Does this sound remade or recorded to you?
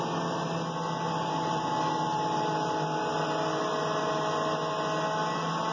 recorded